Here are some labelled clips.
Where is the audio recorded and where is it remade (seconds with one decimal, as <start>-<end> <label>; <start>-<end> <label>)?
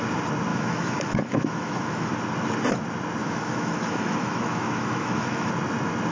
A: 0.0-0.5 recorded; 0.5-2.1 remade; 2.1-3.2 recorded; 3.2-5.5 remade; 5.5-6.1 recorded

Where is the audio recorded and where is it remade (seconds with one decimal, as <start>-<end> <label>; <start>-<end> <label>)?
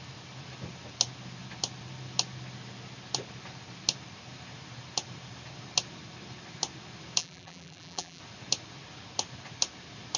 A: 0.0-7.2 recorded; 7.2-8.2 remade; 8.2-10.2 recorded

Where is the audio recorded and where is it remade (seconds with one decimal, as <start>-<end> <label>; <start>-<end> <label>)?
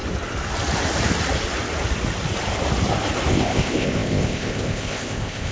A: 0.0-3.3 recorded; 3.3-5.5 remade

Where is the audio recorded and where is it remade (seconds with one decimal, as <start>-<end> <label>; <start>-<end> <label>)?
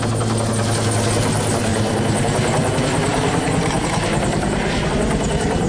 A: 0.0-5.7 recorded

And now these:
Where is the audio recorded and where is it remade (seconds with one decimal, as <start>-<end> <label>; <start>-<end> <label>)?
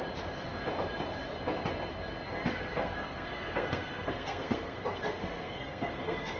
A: 0.0-2.5 recorded; 2.5-6.4 remade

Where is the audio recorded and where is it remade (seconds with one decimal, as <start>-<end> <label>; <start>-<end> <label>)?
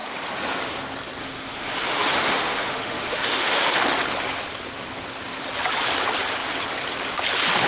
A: 0.0-1.2 recorded; 1.2-3.7 remade; 3.7-7.7 recorded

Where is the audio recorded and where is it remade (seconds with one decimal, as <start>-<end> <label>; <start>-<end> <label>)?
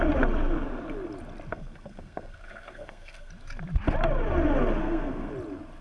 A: 0.0-1.5 recorded; 1.5-3.3 remade; 3.3-4.8 recorded; 4.8-5.3 remade; 5.3-5.8 recorded